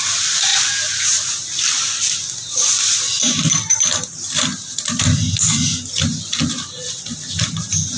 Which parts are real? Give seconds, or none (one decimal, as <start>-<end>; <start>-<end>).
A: 0.0-8.0